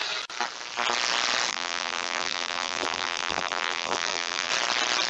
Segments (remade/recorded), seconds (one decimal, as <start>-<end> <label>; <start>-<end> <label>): 0.0-1.5 recorded; 1.5-4.5 remade; 4.5-5.1 recorded